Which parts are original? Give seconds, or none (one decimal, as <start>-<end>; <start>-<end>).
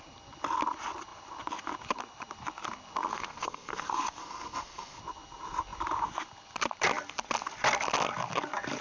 0.0-3.1; 5.0-8.8